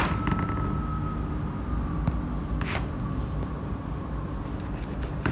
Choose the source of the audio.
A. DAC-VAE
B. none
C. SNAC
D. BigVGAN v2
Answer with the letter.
B